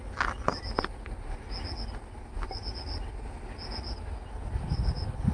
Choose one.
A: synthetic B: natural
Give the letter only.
B